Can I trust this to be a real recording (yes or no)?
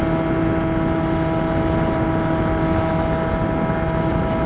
yes